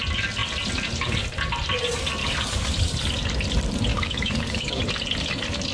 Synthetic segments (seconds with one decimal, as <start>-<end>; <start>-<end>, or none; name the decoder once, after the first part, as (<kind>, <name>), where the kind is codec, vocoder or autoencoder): 2.2-2.7 (codec, DAC); 3.9-4.8